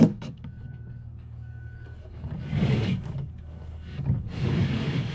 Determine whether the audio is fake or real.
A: fake